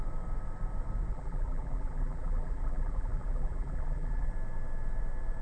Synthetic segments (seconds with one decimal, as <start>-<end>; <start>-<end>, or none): 1.1-4.3